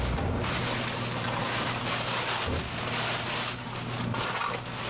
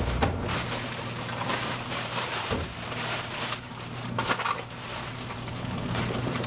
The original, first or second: first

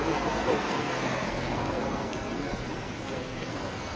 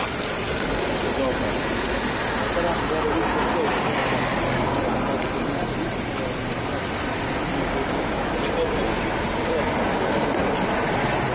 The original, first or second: second